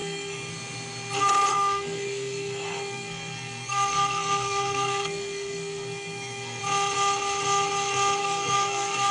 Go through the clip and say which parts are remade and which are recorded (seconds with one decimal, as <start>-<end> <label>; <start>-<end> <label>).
0.0-0.5 remade; 0.5-1.5 recorded; 1.5-6.6 remade; 6.6-8.2 recorded; 8.2-9.1 remade